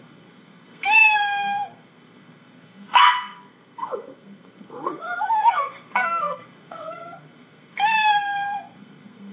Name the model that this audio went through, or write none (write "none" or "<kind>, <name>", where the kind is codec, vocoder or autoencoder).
codec, SNAC